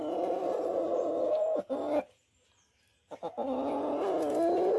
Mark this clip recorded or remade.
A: recorded